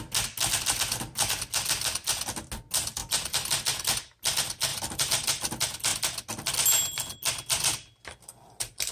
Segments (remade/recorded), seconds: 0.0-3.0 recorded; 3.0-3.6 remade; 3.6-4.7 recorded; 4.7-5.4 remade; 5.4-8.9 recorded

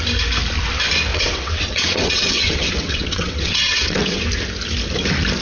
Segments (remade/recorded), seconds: 0.0-1.1 recorded; 1.1-4.2 remade; 4.2-5.4 recorded

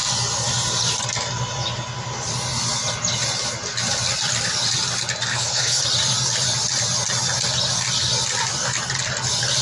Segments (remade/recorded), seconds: 0.0-5.3 recorded; 5.3-5.8 remade; 5.8-9.6 recorded

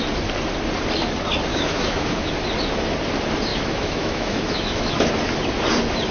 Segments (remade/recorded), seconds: 0.0-1.5 recorded; 1.5-2.3 remade; 2.3-3.5 recorded; 3.5-5.1 remade; 5.1-6.1 recorded

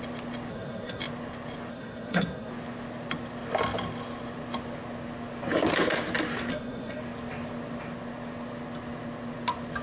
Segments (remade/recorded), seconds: 0.0-0.5 recorded; 0.5-1.0 remade; 1.0-1.7 recorded; 1.7-2.5 remade; 2.5-6.5 recorded; 6.5-7.0 remade; 7.0-9.8 recorded